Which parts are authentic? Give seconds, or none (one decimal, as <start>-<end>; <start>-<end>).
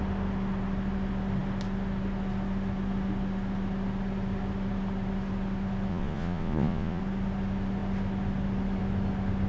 0.0-5.9; 7.0-9.5